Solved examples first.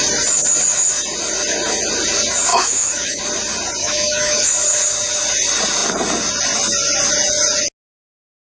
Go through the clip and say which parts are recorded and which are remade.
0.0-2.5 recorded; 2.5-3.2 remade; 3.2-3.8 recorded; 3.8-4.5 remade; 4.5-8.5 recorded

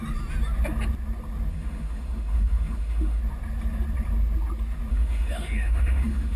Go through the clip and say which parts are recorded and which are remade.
0.0-1.5 recorded; 1.5-3.2 remade; 3.2-4.9 recorded; 4.9-6.4 remade

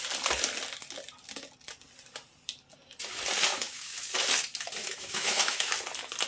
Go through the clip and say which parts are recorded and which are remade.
0.0-3.5 recorded; 3.5-4.1 remade; 4.1-4.8 recorded; 4.8-5.7 remade; 5.7-6.3 recorded

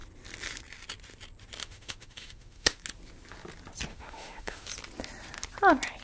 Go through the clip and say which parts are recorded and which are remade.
0.0-1.6 recorded; 1.6-2.8 remade; 2.8-3.9 recorded; 3.9-4.7 remade; 4.7-6.0 recorded

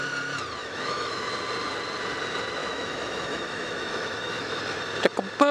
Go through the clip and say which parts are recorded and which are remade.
0.0-0.6 recorded; 0.6-1.3 remade; 1.3-2.6 recorded; 2.6-4.6 remade; 4.6-5.5 recorded

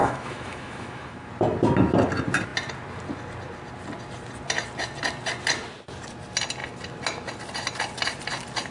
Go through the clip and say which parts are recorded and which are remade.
0.0-1.3 remade; 1.3-8.7 recorded